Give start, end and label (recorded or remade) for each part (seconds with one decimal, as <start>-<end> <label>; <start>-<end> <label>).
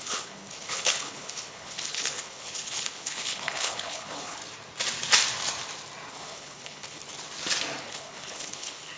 0.0-4.4 remade; 4.4-6.1 recorded; 6.1-7.0 remade; 7.0-7.8 recorded; 7.8-9.0 remade